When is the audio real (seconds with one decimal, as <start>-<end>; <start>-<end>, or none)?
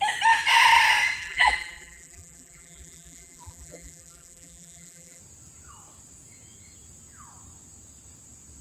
0.0-1.2; 5.2-8.6